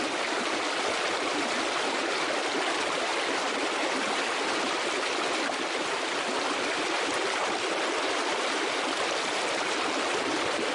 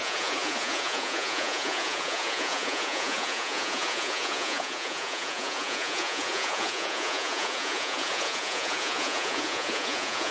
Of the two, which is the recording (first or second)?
first